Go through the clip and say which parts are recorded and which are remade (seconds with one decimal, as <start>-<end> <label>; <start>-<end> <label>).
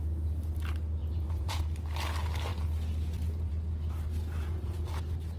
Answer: 0.0-1.0 recorded; 1.0-1.6 remade; 1.6-4.4 recorded; 4.4-4.9 remade; 4.9-5.4 recorded